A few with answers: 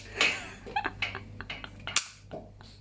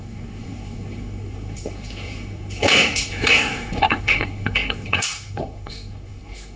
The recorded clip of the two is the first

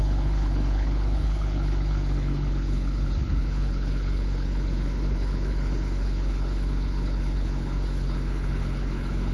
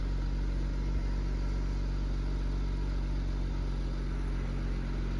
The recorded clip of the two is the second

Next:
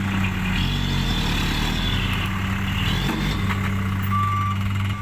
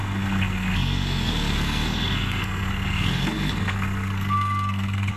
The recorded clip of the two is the first